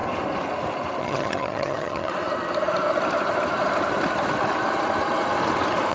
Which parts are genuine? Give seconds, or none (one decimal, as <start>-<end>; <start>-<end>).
0.0-1.0; 2.1-5.9